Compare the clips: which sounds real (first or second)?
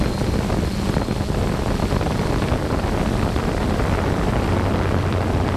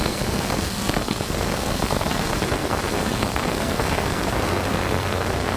first